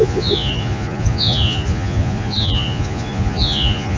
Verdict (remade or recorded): remade